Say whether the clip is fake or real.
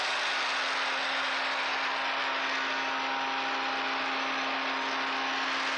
real